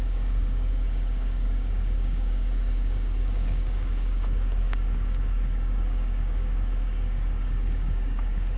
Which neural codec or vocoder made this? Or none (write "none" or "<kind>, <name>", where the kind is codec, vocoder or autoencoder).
codec, DAC